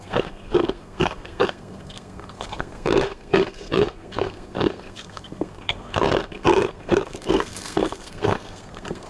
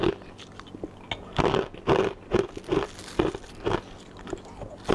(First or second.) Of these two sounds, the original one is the second